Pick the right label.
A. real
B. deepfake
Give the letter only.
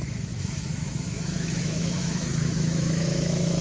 B